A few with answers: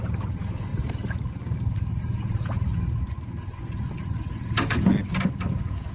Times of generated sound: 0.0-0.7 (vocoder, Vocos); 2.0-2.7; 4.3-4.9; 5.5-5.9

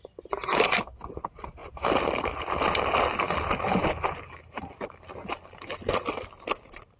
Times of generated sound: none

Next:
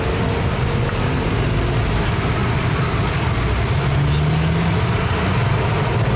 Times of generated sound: none

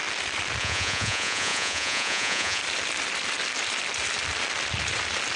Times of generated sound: 0.6-2.6 (vocoder, Vocos)

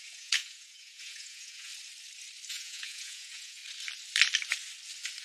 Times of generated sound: 0.0-1.7 (vocoder, Vocos); 2.5-3.6

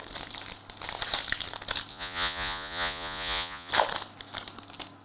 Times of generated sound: 1.9-3.7 (vocoder, Vocos)